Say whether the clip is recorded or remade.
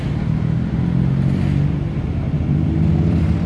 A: recorded